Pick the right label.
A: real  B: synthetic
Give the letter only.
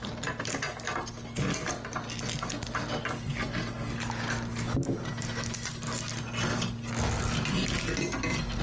A